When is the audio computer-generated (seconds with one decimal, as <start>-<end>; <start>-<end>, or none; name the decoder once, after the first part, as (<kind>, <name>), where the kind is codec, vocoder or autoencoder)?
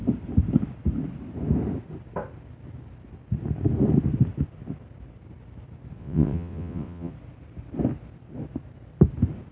6.0-7.1 (vocoder, WaveNeXt)